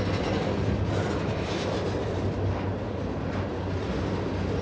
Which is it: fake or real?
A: real